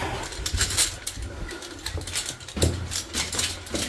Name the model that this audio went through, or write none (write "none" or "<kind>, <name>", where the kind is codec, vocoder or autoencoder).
none